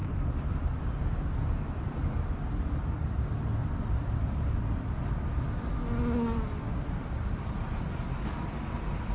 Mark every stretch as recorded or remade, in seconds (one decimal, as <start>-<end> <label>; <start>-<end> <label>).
0.0-0.8 remade; 0.8-3.6 recorded; 3.6-5.2 remade; 5.2-9.1 recorded